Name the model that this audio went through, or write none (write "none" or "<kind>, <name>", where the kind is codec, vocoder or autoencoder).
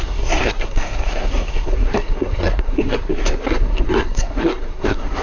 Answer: codec, SNAC